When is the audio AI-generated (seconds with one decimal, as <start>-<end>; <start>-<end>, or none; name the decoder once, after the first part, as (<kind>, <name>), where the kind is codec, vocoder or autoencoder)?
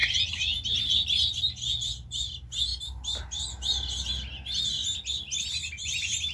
0.0-1.4 (vocoder, BigVGAN v2); 2.7-4.0